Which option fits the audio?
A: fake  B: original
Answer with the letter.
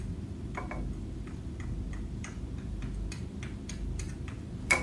A